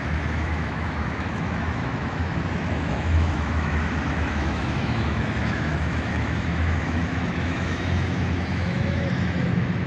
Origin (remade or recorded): remade